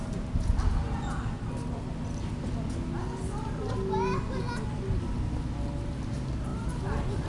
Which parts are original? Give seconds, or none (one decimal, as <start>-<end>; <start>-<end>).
0.0-6.5